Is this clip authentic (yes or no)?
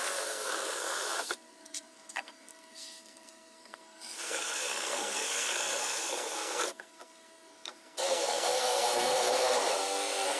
no